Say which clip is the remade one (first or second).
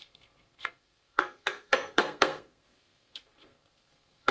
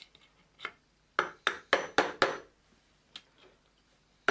first